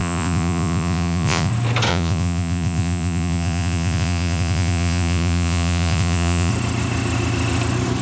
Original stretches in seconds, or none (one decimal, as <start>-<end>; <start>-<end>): 1.5-1.9; 6.5-8.0